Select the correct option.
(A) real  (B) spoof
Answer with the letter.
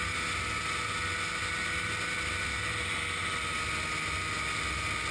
A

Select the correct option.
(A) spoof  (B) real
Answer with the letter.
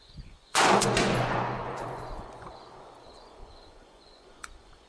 A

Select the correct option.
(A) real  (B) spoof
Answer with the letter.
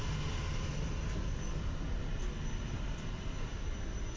A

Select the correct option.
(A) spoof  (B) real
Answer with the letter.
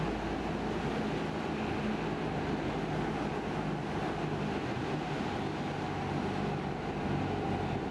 B